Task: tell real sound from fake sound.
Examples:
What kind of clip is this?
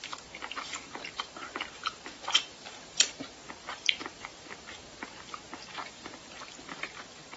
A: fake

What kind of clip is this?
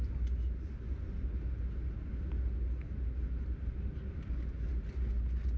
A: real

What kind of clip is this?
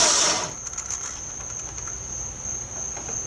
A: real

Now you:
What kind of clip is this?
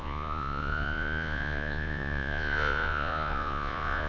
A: fake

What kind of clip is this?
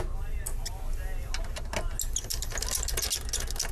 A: real